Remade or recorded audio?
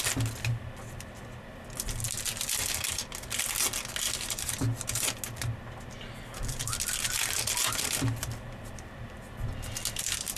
recorded